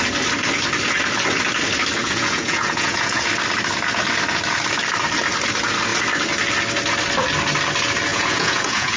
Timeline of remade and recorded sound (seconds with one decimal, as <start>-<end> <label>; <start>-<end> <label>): 0.0-2.0 recorded; 2.0-3.2 remade; 3.2-8.1 recorded; 8.1-9.0 remade